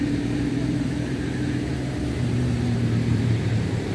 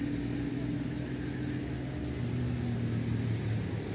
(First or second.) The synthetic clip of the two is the first